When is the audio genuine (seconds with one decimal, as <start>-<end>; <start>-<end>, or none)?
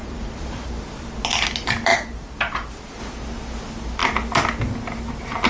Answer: 1.1-1.9; 3.0-5.5